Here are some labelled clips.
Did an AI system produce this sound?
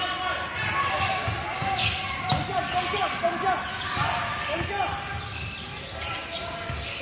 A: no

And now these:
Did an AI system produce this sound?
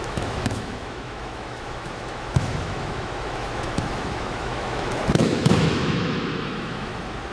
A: yes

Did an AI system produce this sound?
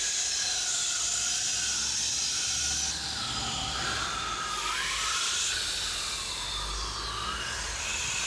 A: no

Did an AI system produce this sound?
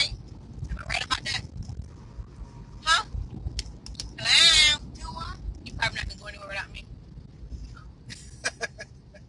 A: no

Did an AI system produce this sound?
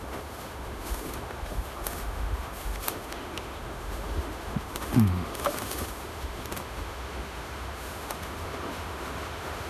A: yes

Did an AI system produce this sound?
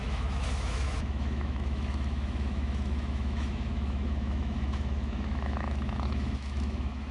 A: yes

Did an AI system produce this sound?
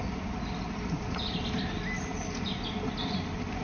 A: no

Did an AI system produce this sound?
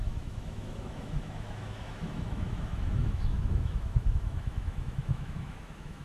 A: yes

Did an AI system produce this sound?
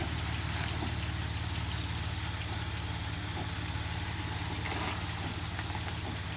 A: no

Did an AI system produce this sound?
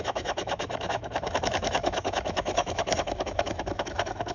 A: yes